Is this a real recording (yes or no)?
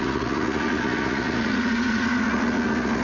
no